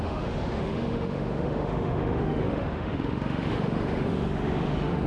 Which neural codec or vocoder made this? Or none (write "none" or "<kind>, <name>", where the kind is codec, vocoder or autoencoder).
autoencoder, DAC-VAE